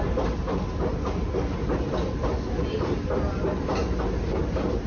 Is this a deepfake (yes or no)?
no